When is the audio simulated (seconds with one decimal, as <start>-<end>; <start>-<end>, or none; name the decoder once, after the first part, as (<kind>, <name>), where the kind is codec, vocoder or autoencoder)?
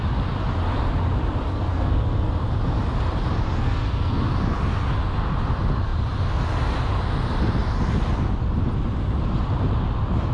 1.5-2.3 (codec, SNAC); 3.6-4.2